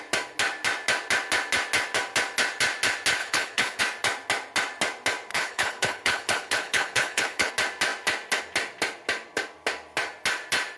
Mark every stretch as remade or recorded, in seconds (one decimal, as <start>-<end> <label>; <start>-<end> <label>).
0.0-3.2 recorded; 3.2-3.8 remade; 3.8-5.3 recorded; 5.3-7.5 remade; 7.5-10.8 recorded